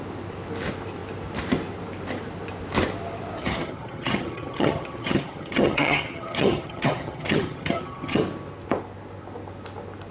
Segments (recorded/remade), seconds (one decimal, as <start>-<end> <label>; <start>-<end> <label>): 0.0-3.4 recorded; 3.4-8.2 remade; 8.2-10.1 recorded